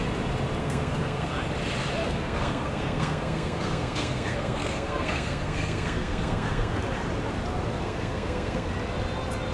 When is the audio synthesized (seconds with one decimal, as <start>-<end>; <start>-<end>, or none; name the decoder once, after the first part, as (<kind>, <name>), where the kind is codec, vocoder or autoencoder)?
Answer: 0.6-1.3 (codec, SNAC); 2.0-6.8; 7.7-8.7